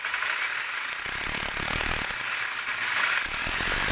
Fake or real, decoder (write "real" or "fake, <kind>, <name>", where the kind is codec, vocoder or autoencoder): real